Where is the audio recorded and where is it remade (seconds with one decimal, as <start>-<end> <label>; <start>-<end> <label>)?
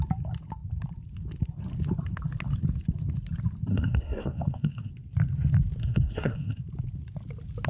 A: 0.0-3.7 recorded; 3.7-4.9 remade; 4.9-5.8 recorded; 5.8-6.6 remade; 6.6-7.7 recorded